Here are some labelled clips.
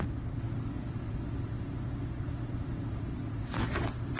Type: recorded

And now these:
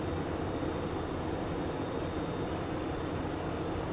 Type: recorded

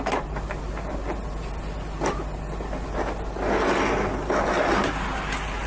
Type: recorded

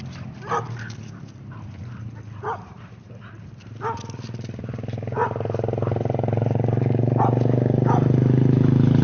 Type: recorded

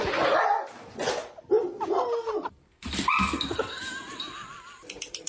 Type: recorded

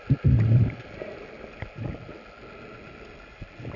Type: recorded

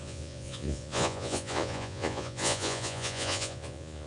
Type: remade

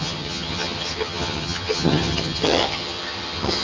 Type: remade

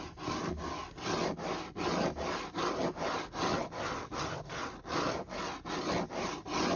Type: recorded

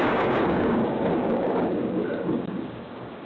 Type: remade